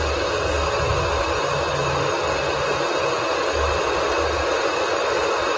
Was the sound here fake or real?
real